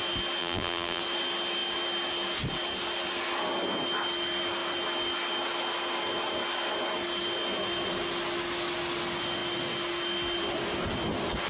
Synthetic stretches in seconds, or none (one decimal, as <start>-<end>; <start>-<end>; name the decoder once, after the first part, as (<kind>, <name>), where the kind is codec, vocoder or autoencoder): 0.4-1.0 (vocoder, BigVGAN v2)